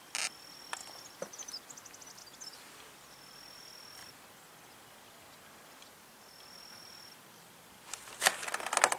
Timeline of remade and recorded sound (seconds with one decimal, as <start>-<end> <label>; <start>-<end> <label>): 0.0-0.8 recorded; 0.8-1.6 remade; 1.6-4.0 recorded; 4.0-8.1 remade; 8.1-9.0 recorded